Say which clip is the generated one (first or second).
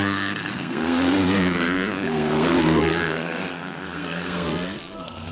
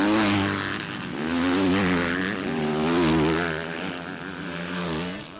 first